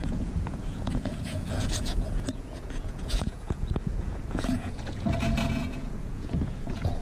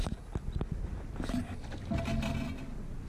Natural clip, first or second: second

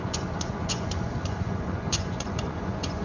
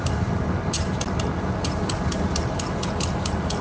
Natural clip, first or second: second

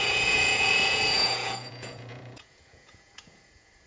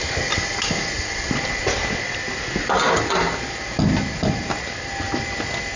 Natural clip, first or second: second